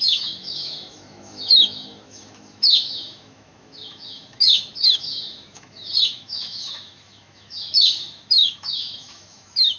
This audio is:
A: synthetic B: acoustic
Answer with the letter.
A